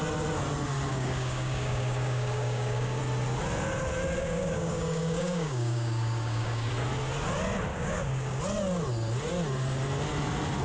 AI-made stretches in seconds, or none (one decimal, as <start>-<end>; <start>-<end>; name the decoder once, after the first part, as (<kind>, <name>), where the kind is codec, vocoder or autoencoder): 0.9-3.0 (codec, DAC); 4.2-6.7; 7.7-8.4